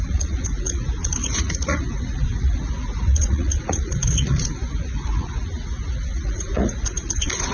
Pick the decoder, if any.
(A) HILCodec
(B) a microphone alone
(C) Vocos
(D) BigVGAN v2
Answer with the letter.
C